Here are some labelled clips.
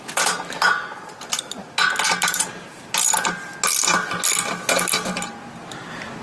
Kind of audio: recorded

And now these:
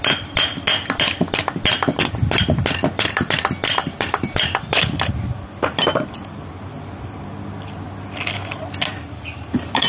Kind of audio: recorded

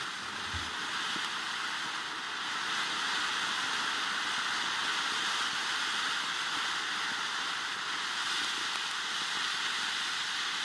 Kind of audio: recorded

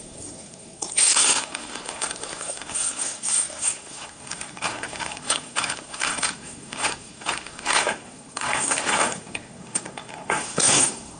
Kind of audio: remade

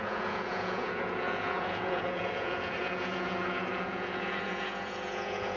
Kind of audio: remade